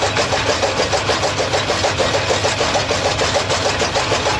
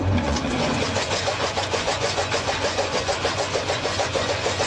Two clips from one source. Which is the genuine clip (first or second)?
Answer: first